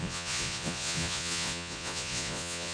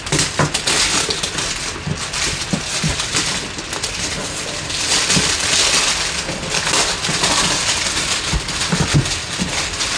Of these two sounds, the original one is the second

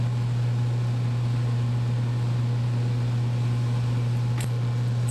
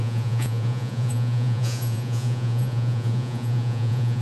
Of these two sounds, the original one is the first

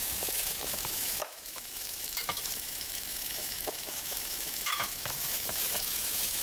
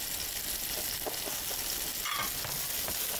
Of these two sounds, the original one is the second